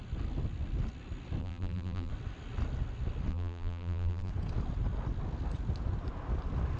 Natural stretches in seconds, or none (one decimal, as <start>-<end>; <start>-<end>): 0.0-1.4; 2.1-3.3; 4.3-6.8